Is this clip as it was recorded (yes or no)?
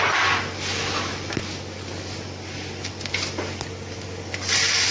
yes